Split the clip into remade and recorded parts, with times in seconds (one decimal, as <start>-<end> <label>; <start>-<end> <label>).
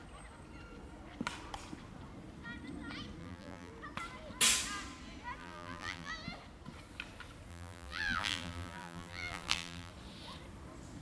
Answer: 0.0-3.2 recorded; 3.2-3.7 remade; 3.7-5.4 recorded; 5.4-6.1 remade; 6.1-7.5 recorded; 7.5-9.9 remade; 9.9-11.0 recorded